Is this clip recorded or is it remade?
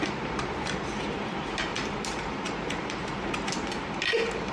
remade